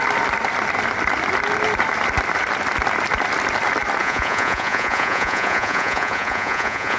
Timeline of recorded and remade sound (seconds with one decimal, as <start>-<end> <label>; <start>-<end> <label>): 0.0-4.0 recorded; 4.0-7.0 remade